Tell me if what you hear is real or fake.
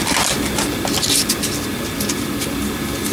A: real